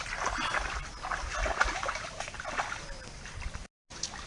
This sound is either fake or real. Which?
real